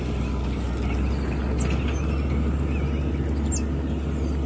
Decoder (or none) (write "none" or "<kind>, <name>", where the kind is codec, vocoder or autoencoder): none